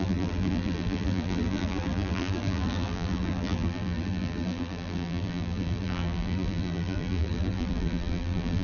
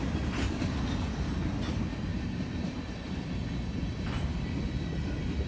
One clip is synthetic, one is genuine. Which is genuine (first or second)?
second